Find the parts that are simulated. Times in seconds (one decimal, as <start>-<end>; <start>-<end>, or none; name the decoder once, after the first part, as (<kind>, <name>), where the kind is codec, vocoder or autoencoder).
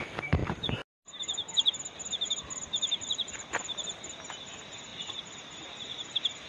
4.9-5.8 (vocoder, BigVGAN v2)